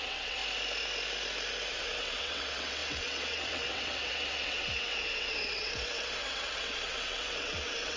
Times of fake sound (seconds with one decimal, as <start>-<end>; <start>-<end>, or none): 0.0-0.4; 1.7-8.0